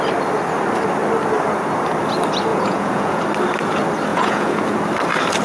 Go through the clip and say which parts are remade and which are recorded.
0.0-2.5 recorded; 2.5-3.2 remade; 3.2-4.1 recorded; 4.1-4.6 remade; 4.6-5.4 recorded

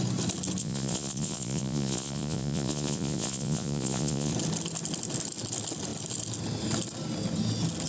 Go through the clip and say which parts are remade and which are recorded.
0.0-0.6 recorded; 0.6-4.3 remade; 4.3-7.9 recorded

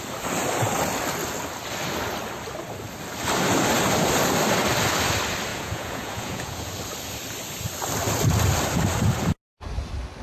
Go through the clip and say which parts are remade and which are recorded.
0.0-5.5 recorded; 5.5-6.7 remade; 6.7-10.2 recorded

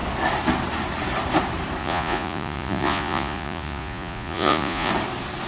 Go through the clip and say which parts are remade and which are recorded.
0.0-1.8 recorded; 1.8-4.9 remade; 4.9-5.5 recorded

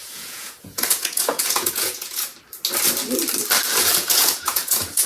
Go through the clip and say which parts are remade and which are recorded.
0.0-2.3 remade; 2.3-3.8 recorded; 3.8-5.1 remade